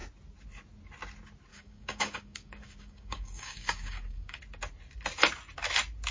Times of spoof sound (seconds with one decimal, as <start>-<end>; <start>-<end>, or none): 1.5-4.4